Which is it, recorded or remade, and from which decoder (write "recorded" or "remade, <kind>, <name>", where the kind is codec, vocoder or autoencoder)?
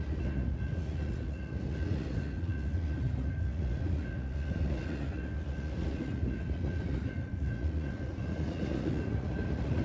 remade, vocoder, Vocos